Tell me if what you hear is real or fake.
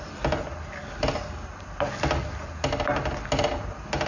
real